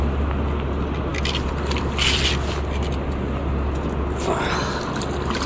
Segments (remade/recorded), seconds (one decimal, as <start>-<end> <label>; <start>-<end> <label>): 0.0-5.5 recorded